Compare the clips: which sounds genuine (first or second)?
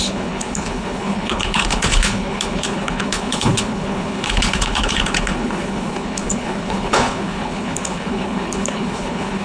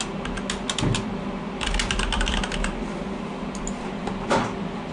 second